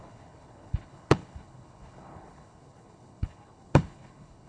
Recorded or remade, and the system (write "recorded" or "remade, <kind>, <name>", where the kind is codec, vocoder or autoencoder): remade, codec, HILCodec